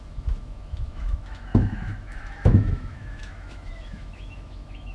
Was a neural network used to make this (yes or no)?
yes